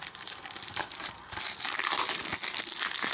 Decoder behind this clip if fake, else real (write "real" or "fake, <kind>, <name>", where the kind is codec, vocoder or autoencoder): real